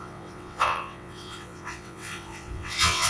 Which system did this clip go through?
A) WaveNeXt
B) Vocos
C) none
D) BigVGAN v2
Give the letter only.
A